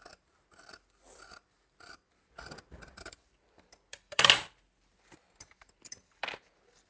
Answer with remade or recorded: remade